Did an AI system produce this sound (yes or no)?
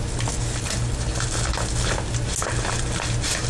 no